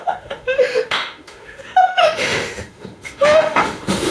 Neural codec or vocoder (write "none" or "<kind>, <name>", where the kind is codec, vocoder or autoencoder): autoencoder, DAC-VAE